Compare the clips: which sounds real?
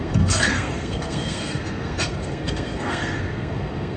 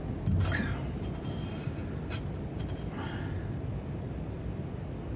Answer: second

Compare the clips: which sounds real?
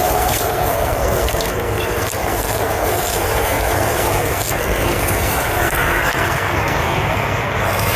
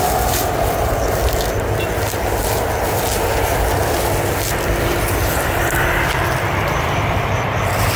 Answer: second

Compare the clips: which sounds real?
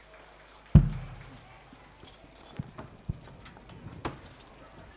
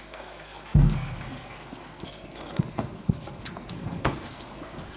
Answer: first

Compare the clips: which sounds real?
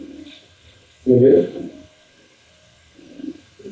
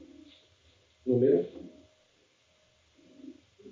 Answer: second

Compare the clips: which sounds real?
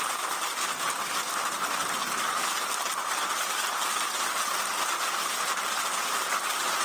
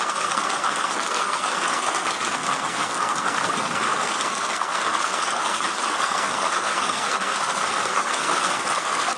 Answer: first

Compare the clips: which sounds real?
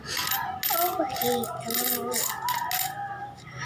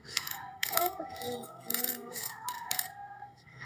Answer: first